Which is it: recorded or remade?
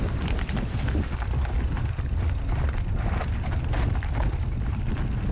recorded